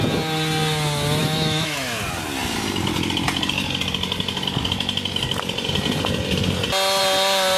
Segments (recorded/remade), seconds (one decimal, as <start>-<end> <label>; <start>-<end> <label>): 0.0-1.2 recorded; 1.2-2.0 remade; 2.0-7.6 recorded